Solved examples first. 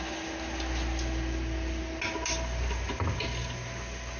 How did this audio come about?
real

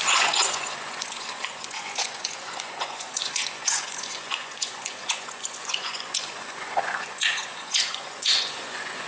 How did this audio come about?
fake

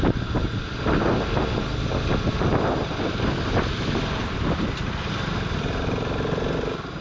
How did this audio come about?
real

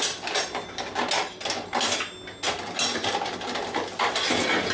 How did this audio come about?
real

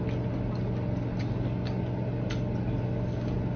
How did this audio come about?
real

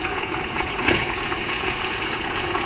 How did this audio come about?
fake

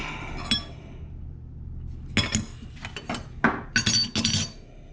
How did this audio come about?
real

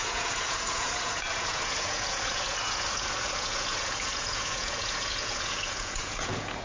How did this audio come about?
fake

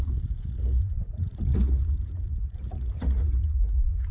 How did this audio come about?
fake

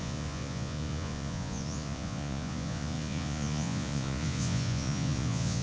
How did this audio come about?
fake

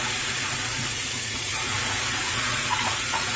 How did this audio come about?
fake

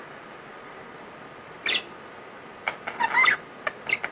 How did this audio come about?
real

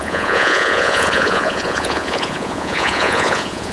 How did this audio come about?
fake